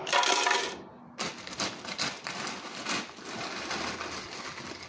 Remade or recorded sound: recorded